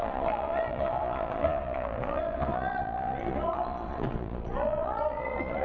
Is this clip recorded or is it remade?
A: remade